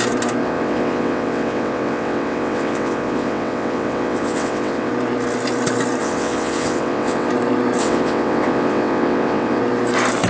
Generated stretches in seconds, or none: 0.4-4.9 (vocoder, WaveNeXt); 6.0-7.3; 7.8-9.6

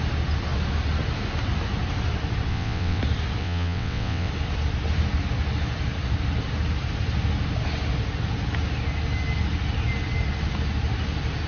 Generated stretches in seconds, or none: 2.5-3.0 (vocoder, WaveNeXt); 3.4-4.3

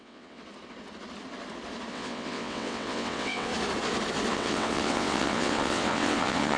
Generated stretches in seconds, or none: 0.0-0.4 (vocoder, WaveNeXt); 1.9-3.5; 4.3-6.6

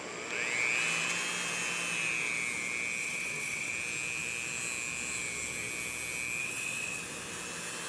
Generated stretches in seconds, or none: 3.0-3.7 (vocoder, WaveNeXt); 6.4-7.0